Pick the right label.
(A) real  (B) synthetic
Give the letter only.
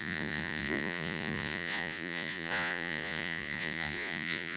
B